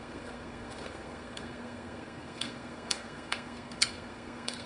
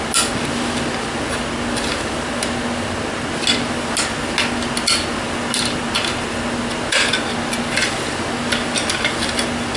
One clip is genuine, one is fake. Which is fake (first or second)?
first